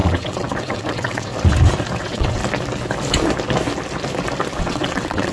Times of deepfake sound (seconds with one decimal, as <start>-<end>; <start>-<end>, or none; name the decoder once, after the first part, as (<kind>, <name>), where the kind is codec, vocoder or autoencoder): 0.0-1.3 (vocoder, WaveNeXt); 2.0-2.4; 4.6-5.3